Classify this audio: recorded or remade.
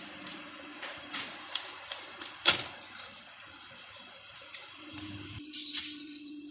remade